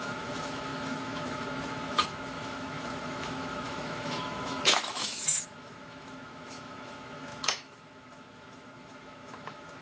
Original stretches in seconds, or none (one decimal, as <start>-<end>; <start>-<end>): none

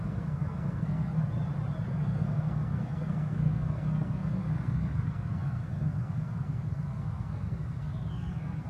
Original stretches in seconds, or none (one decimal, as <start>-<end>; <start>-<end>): 1.2-1.9

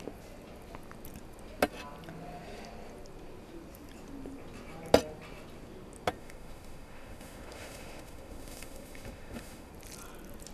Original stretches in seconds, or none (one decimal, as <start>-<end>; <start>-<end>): 0.0-6.2; 9.7-10.5